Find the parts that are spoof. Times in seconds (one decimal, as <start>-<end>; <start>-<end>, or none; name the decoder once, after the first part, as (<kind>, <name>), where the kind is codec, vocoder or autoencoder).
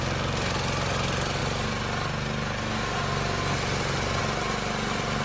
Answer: none